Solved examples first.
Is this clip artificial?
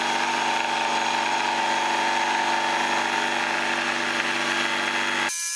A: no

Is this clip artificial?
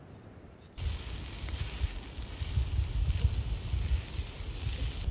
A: no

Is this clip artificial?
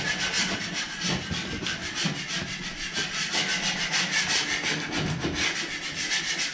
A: no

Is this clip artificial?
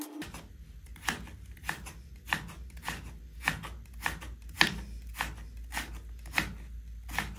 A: no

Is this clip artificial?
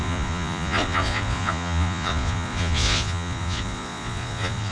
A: yes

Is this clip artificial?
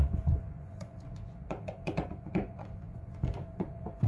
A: yes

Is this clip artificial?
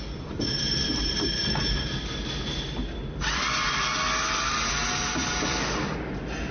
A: no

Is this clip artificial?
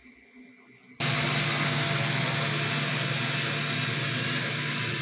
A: no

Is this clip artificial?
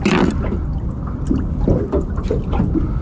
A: no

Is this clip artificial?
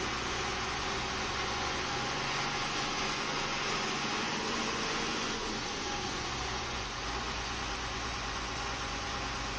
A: yes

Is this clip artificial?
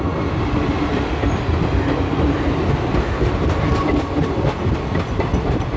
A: no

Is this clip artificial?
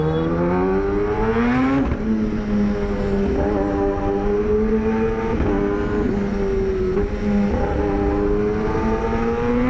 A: no